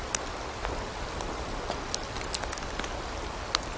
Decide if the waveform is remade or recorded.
recorded